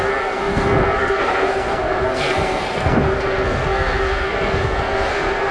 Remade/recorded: remade